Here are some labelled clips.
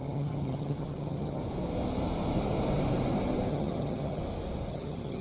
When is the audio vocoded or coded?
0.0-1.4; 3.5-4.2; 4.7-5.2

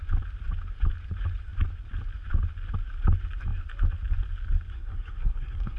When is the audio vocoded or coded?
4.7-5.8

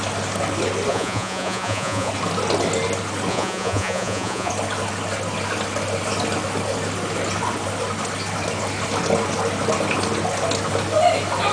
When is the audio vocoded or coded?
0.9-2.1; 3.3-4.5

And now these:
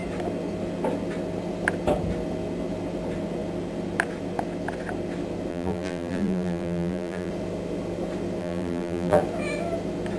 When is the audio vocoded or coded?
5.5-7.3; 8.4-9.2

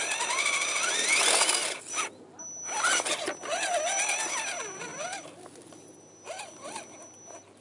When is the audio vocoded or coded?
none